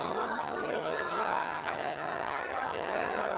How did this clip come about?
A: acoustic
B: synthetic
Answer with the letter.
B